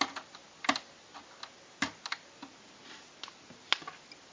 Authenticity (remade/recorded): recorded